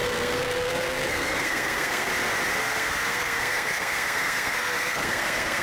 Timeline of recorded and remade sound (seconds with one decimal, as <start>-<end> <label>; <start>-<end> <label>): 0.0-2.1 remade; 2.1-2.6 recorded; 2.6-5.6 remade